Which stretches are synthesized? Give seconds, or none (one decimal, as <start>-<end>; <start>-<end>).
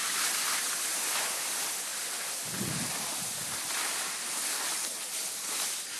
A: none